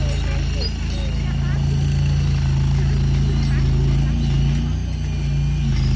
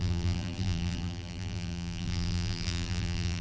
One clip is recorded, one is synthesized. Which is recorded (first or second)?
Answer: first